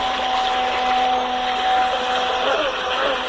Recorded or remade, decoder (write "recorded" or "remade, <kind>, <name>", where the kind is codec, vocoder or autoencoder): recorded